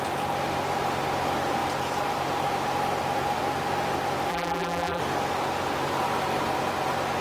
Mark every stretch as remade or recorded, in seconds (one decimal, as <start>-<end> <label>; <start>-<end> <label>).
0.0-4.3 recorded; 4.3-5.0 remade; 5.0-7.2 recorded